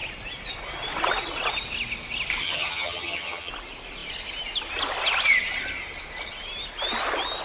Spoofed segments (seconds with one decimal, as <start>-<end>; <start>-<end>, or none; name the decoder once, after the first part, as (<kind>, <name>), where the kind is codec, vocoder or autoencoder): 2.4-3.5 (vocoder, HiFi-GAN)